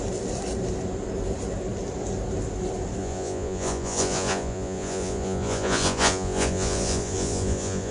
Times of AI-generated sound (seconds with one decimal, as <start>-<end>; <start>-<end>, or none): 3.0-7.9